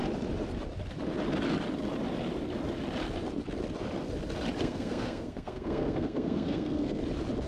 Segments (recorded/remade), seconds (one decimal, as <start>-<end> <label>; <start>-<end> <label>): 0.0-4.6 recorded; 4.6-7.0 remade; 7.0-7.5 recorded